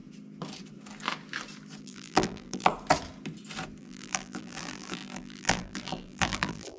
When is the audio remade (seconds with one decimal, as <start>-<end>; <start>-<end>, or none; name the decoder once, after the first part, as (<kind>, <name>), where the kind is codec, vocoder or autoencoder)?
1.8-2.7 (vocoder, BigVGAN v2); 3.8-6.8

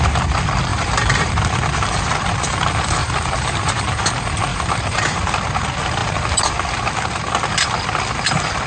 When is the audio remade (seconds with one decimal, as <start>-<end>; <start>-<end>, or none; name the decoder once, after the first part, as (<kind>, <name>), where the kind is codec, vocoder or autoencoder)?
0.7-1.3 (vocoder, BigVGAN v2); 3.0-4.1; 4.5-5.2

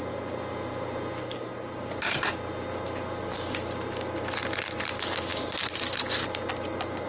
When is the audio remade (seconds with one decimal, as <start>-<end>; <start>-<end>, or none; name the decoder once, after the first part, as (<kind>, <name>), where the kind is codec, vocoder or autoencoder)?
none